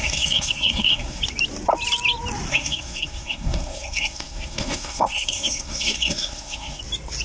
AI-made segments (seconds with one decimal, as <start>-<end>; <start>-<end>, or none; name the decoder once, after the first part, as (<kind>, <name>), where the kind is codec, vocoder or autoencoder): 0.0-1.2 (codec, SNAC); 2.5-6.8